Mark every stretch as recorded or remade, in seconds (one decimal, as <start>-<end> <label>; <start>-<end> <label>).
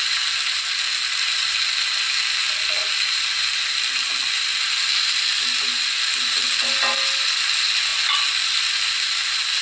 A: 0.0-9.6 recorded